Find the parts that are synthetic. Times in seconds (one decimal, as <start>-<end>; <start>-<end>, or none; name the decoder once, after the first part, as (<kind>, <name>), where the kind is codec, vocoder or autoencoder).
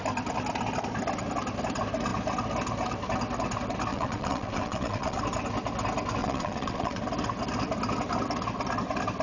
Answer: 3.9-5.2 (vocoder, WaveNeXt); 6.2-7.0